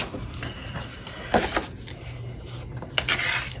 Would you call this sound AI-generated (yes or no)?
no